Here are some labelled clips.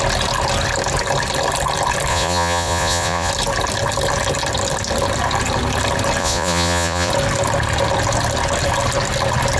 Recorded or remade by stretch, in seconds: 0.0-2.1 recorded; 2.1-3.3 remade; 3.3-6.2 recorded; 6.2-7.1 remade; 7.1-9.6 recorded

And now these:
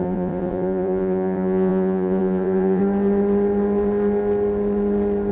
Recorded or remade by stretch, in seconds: 0.0-2.8 remade; 2.8-5.3 recorded

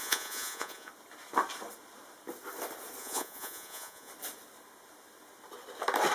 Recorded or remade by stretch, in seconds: 0.0-0.9 remade; 0.9-3.0 recorded; 3.0-4.1 remade; 4.1-6.1 recorded

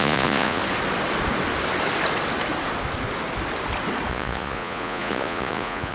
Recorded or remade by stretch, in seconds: 0.0-0.6 remade; 0.6-4.1 recorded; 4.1-5.9 remade

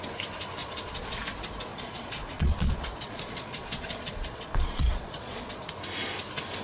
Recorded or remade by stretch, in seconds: 0.0-0.6 recorded; 0.6-1.2 remade; 1.2-1.7 recorded; 1.7-5.7 remade; 5.7-6.6 recorded

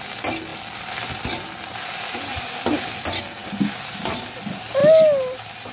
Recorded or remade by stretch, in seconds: 0.0-5.7 recorded